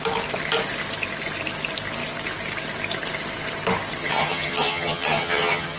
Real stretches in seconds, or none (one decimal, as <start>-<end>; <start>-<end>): 0.0-4.0